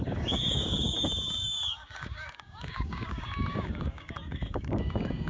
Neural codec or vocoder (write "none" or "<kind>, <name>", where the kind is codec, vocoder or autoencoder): codec, DAC